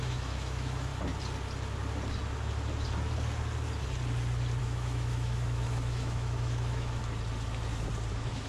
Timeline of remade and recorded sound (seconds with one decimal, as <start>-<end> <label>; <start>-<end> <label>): 0.0-0.9 remade; 0.9-4.6 recorded; 4.6-7.0 remade; 7.0-8.1 recorded; 8.1-8.5 remade